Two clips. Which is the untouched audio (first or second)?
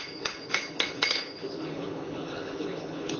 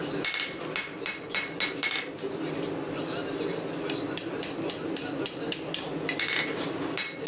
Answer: second